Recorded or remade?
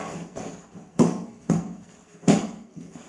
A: remade